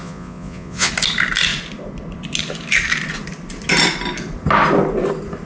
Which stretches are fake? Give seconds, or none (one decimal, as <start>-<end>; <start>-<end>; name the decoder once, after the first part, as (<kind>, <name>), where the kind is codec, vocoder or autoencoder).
0.0-0.9 (vocoder, Vocos)